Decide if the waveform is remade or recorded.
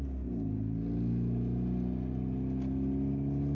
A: recorded